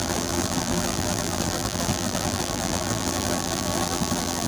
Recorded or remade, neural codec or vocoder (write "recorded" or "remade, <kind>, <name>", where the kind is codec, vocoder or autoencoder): remade, vocoder, BigVGAN v2